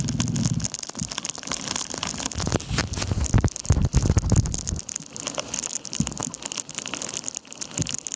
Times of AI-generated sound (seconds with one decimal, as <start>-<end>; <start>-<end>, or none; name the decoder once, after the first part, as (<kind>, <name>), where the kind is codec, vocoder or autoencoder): none